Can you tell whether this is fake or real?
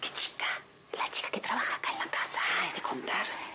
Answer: real